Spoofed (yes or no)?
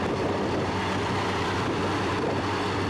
yes